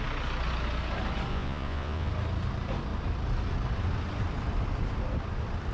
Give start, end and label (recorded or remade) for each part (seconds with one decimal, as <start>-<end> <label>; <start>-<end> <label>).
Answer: 0.0-1.3 recorded; 1.3-2.1 remade; 2.1-5.7 recorded